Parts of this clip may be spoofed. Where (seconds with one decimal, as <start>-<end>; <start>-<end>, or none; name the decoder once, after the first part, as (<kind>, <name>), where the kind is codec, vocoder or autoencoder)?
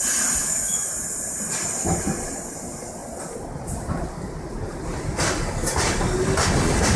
0.4-0.9 (autoencoder, DAC-VAE)